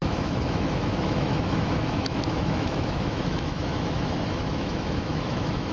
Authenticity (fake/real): fake